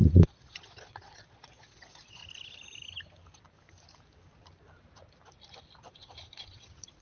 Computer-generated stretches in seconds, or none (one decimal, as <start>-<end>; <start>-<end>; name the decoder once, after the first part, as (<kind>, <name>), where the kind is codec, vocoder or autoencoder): 0.0-2.2 (vocoder, Vocos); 5.9-7.0